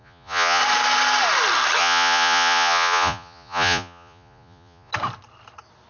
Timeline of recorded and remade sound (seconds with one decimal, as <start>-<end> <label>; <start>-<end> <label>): 0.0-0.6 remade; 0.6-1.8 recorded; 1.8-4.9 remade; 4.9-5.9 recorded